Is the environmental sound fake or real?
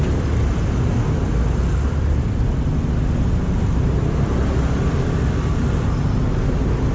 real